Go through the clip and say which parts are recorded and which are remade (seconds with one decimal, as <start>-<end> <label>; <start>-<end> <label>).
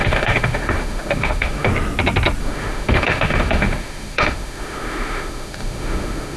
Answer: 0.0-1.7 remade; 1.7-2.4 recorded; 2.4-6.4 remade